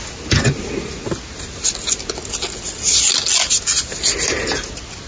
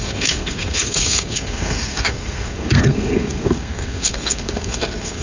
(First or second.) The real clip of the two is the first